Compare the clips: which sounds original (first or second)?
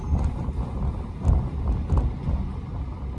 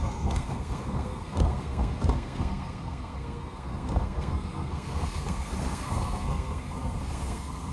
first